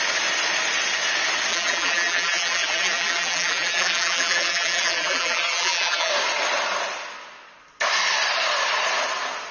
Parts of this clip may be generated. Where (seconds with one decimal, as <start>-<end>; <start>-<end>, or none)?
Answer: 1.5-6.1